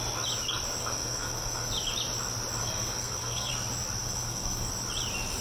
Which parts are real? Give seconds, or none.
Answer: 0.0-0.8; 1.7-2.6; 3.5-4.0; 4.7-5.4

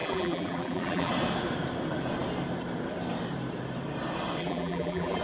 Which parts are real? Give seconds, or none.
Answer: 1.1-4.4

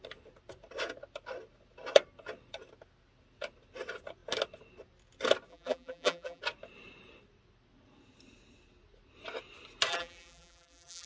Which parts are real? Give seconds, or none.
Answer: 0.0-5.5; 6.4-9.9